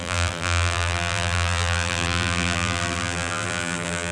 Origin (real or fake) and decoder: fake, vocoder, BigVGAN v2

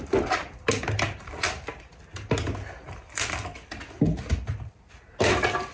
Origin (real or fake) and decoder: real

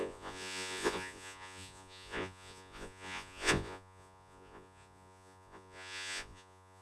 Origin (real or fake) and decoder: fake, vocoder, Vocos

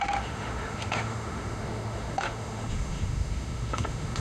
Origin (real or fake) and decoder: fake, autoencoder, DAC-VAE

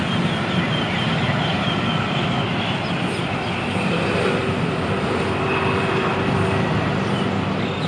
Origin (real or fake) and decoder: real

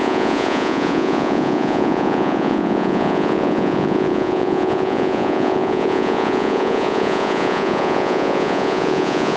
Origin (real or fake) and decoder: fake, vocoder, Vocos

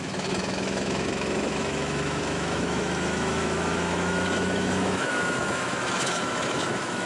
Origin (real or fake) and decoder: fake, autoencoder, DAC-VAE